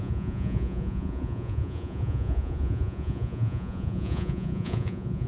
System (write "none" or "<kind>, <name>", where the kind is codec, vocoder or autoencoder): vocoder, Vocos